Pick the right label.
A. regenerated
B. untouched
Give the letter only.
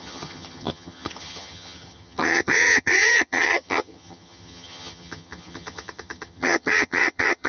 A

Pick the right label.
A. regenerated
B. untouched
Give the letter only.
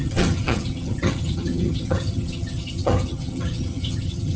A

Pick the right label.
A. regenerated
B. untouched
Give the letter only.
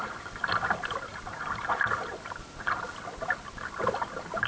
B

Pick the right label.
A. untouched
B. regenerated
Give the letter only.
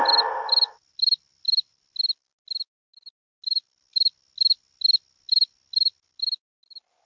A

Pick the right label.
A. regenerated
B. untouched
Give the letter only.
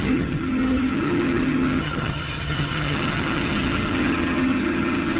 A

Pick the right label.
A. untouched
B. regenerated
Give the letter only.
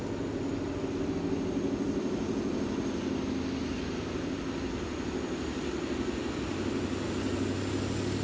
A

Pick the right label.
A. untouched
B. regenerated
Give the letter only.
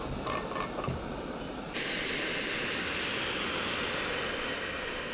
A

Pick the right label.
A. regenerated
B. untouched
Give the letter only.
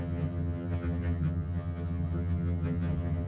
A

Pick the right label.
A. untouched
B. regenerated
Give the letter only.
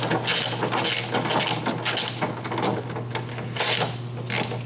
A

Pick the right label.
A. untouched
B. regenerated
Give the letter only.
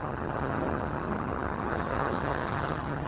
B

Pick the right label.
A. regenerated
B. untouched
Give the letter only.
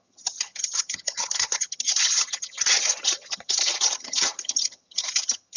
A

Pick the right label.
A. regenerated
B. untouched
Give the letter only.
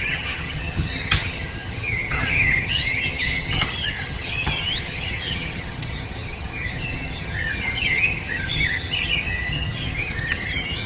A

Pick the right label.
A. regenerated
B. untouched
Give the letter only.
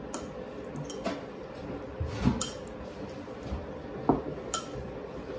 B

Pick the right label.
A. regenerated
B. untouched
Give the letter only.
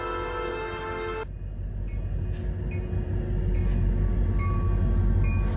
B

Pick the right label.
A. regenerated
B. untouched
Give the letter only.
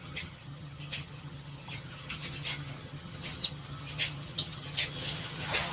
A